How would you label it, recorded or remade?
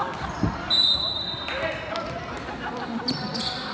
recorded